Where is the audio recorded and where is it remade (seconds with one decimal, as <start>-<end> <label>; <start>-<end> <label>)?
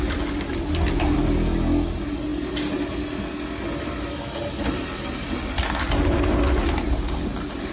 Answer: 0.0-7.7 recorded